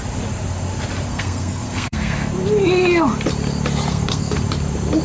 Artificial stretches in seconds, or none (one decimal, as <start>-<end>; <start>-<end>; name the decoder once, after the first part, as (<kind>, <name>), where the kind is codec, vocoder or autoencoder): 1.1-2.3 (codec, SNAC); 3.9-4.4